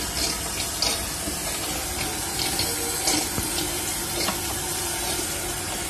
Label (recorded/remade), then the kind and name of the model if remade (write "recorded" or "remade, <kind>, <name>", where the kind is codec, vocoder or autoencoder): recorded